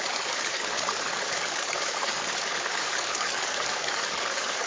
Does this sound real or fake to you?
fake